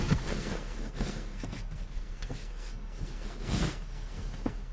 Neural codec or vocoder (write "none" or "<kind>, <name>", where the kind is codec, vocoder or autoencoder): codec, SNAC